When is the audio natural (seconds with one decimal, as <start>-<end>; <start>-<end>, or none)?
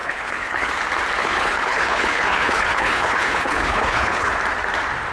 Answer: 0.7-1.2; 4.3-5.1